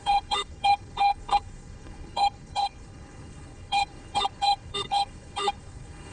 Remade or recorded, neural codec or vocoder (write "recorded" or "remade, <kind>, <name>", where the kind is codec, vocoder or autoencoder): remade, codec, HILCodec